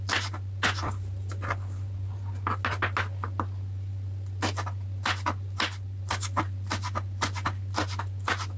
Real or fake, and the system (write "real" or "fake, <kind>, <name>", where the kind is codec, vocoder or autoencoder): real